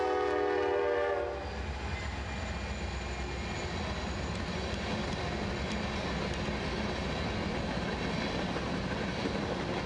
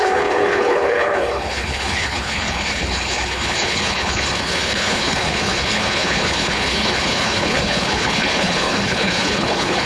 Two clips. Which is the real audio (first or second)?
first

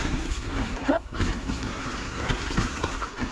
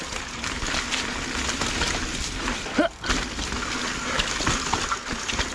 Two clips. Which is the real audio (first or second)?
second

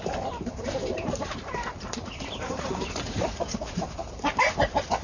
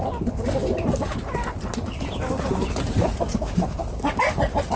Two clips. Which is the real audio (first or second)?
second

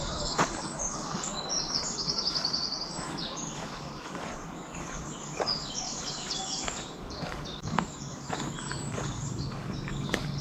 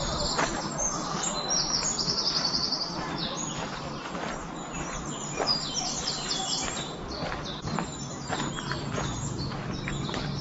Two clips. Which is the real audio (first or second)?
second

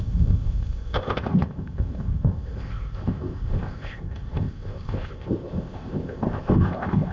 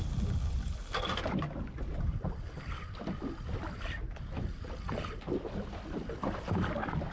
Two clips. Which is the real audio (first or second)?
second